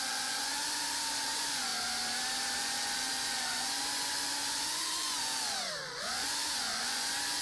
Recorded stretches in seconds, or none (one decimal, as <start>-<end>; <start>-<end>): 1.7-2.6